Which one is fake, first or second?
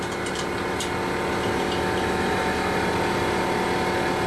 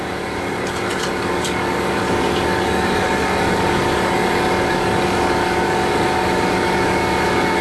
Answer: second